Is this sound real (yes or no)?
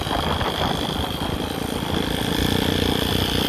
yes